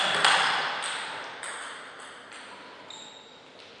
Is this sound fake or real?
real